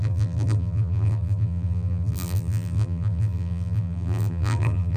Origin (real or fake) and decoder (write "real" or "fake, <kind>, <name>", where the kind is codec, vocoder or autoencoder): fake, vocoder, BigVGAN v2